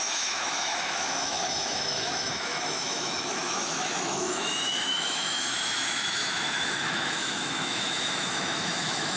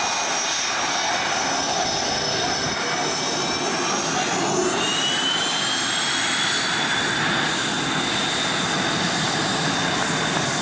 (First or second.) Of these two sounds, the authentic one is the second